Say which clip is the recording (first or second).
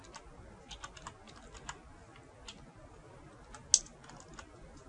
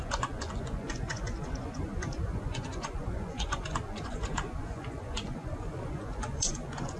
first